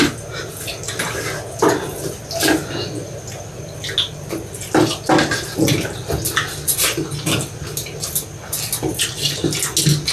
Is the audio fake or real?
real